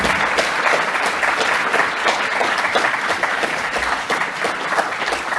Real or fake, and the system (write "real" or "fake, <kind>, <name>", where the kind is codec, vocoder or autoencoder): fake, vocoder, BigVGAN v2